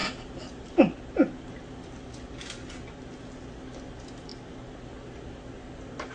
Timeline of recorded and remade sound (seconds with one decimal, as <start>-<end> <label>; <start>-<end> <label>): 0.0-6.1 recorded